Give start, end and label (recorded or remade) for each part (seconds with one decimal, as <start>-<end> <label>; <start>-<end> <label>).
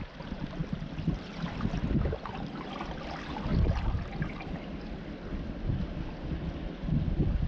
0.0-7.5 recorded